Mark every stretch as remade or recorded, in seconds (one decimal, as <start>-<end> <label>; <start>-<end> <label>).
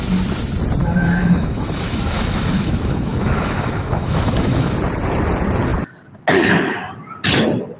0.0-0.8 recorded; 0.8-4.7 remade; 4.7-7.8 recorded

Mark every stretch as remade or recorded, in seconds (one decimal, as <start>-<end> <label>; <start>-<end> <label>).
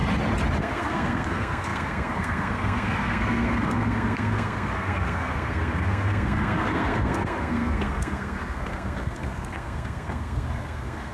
0.0-0.6 recorded; 0.6-11.1 remade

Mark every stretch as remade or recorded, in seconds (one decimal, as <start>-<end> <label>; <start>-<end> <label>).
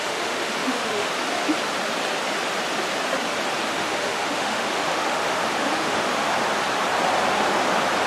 0.0-1.1 remade; 1.1-3.7 recorded; 3.7-6.4 remade; 6.4-8.1 recorded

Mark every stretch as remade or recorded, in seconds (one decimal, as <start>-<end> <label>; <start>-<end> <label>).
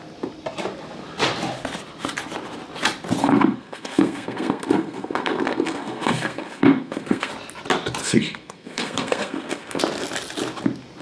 0.0-3.2 recorded; 3.2-7.3 remade; 7.3-8.0 recorded; 8.0-9.8 remade; 9.8-11.0 recorded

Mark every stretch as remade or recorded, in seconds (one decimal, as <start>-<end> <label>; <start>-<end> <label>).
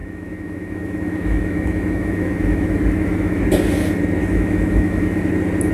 0.0-3.4 remade; 3.4-4.2 recorded; 4.2-5.3 remade; 5.3-5.7 recorded